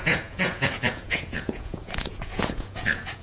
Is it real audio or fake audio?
fake